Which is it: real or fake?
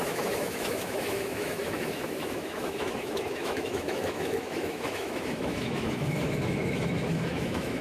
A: fake